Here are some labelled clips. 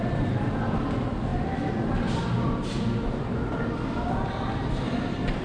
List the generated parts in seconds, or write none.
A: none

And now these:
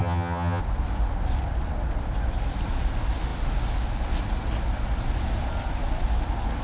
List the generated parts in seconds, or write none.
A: 0.0-0.6 (vocoder, HiFi-GAN)

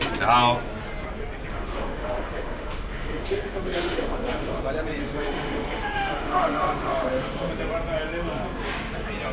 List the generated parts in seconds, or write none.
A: 1.5-4.6 (autoencoder, DAC-VAE); 5.0-7.5